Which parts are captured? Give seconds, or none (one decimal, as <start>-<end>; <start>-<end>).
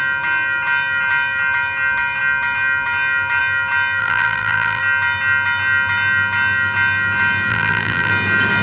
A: 0.0-4.0; 4.8-7.5; 8.1-8.6